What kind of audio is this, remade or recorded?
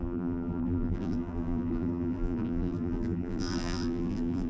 remade